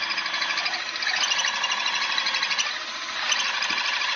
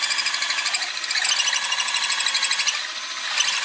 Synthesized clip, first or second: first